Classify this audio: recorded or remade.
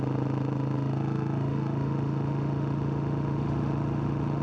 remade